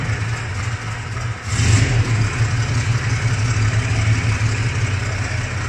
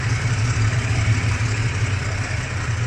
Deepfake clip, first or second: second